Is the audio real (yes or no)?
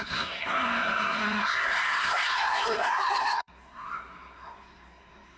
no